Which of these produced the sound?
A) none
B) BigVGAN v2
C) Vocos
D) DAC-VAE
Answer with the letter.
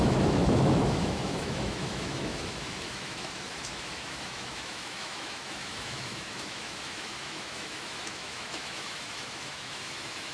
D